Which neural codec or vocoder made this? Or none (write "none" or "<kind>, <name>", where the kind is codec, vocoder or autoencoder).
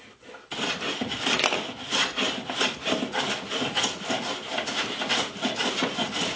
vocoder, BigVGAN v2